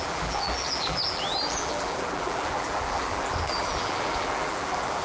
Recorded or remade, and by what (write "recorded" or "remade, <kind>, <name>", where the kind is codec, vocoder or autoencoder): remade, vocoder, BigVGAN v2